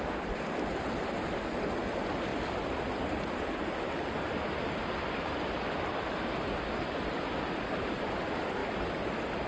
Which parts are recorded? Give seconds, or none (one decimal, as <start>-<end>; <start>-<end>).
0.0-9.5